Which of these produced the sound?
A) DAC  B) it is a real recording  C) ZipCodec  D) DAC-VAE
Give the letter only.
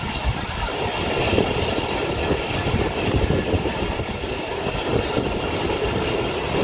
B